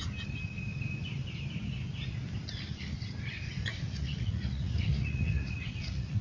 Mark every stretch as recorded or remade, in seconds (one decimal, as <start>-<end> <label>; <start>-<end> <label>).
0.0-3.7 recorded; 3.7-6.2 remade